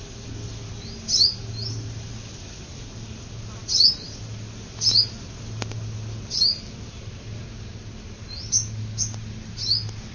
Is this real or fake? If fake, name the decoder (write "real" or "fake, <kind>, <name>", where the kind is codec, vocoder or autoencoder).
real